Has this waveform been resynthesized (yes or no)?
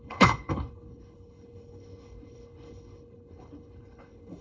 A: yes